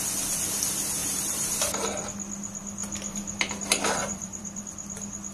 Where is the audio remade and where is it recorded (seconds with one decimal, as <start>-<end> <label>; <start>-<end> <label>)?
0.0-1.0 recorded; 1.0-1.6 remade; 1.6-4.0 recorded; 4.0-4.6 remade; 4.6-5.3 recorded